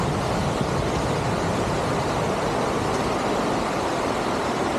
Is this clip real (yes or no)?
yes